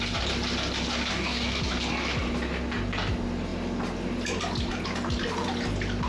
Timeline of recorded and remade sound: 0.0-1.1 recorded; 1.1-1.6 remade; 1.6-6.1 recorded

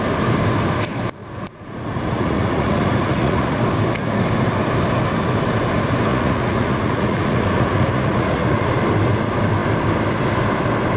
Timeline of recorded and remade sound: 0.0-1.2 recorded; 1.2-3.6 remade; 3.6-6.1 recorded; 6.1-8.7 remade; 8.7-11.0 recorded

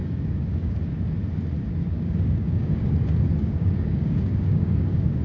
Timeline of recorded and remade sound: 0.0-0.8 remade; 0.8-1.8 recorded; 1.8-5.2 remade

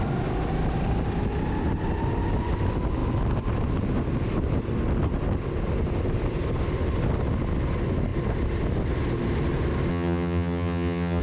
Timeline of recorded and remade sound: 0.0-9.9 recorded; 9.9-11.2 remade